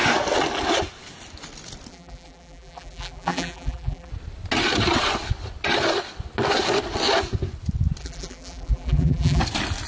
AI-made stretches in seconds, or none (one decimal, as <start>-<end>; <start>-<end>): 1.9-4.1; 8.0-9.4